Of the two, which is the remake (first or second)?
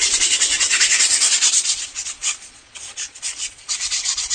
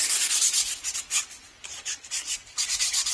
first